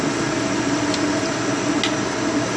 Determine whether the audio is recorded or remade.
recorded